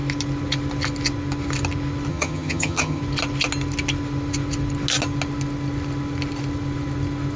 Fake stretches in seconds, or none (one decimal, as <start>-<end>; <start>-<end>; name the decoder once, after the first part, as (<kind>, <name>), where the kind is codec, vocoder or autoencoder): 2.1-3.0 (vocoder, HiFi-GAN)